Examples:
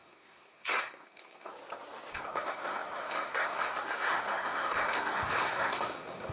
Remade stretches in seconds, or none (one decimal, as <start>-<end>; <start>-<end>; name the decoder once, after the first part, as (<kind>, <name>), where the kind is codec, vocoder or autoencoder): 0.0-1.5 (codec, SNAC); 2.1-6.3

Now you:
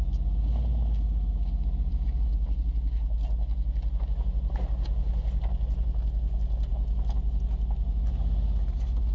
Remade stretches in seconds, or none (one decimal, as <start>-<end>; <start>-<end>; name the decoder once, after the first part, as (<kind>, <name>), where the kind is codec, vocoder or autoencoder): none

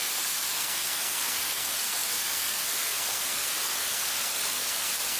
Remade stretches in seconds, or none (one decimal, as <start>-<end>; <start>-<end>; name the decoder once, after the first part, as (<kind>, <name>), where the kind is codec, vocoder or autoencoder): 0.0-5.2 (codec, SNAC)